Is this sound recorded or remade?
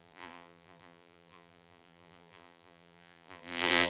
remade